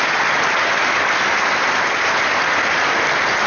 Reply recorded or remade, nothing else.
recorded